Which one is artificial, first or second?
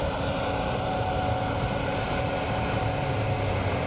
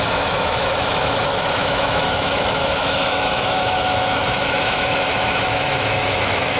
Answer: second